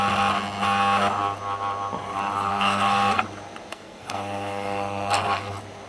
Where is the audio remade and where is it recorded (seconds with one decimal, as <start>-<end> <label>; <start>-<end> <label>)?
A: 0.0-2.5 recorded; 2.5-3.2 remade; 3.2-3.7 recorded; 3.7-5.5 remade; 5.5-5.9 recorded

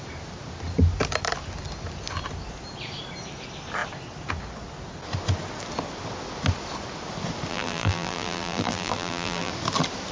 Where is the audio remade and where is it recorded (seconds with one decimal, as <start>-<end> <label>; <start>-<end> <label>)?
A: 0.0-7.5 recorded; 7.5-9.5 remade; 9.5-10.1 recorded

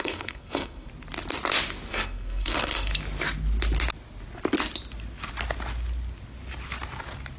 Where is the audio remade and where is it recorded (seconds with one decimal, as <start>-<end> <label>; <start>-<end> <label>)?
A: 0.0-0.9 remade; 0.9-1.9 recorded; 1.9-2.9 remade; 2.9-7.4 recorded

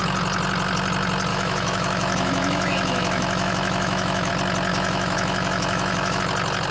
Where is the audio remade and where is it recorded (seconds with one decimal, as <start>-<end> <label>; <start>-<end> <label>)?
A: 0.0-1.3 recorded; 1.3-4.3 remade; 4.3-4.7 recorded; 4.7-6.2 remade; 6.2-6.7 recorded